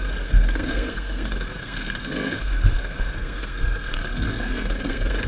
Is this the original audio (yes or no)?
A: no